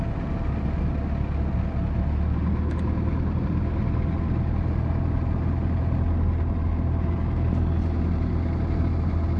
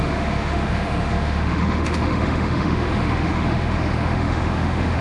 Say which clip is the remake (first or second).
second